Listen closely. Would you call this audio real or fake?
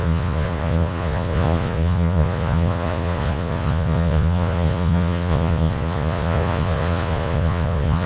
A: fake